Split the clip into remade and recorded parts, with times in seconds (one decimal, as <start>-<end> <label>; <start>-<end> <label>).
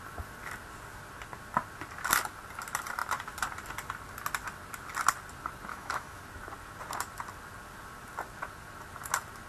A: 0.0-5.7 recorded; 5.7-6.2 remade; 6.2-9.5 recorded